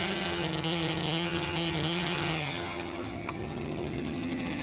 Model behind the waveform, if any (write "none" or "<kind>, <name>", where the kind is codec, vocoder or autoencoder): vocoder, HiFi-GAN